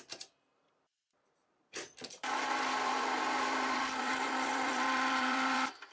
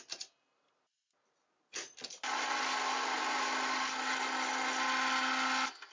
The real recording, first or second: second